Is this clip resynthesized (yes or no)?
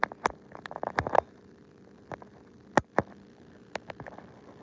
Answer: no